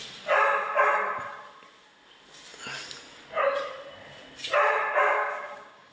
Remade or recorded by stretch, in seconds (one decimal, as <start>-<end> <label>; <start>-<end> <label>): 0.0-5.0 recorded; 5.0-5.9 remade